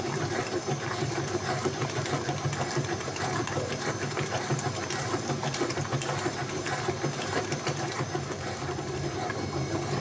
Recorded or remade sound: remade